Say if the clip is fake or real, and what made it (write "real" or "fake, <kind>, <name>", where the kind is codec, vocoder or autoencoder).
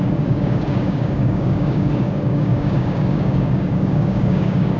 fake, codec, DAC